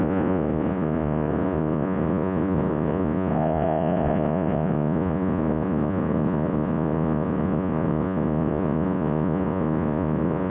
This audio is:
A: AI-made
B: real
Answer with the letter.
A